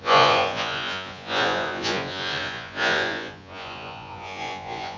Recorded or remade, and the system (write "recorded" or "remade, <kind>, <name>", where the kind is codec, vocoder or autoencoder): remade, vocoder, Vocos